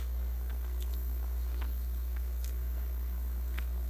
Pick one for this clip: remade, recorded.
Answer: remade